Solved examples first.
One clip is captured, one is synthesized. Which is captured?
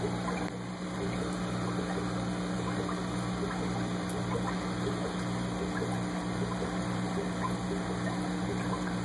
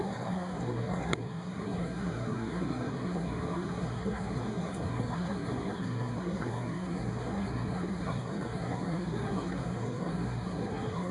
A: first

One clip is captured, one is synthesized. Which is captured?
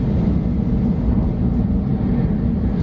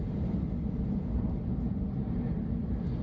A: first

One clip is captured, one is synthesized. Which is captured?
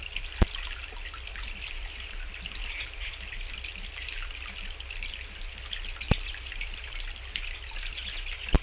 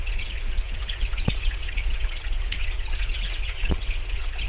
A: first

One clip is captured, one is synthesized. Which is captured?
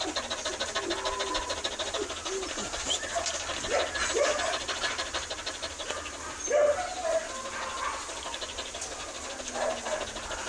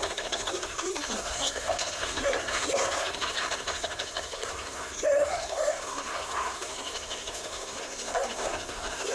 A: first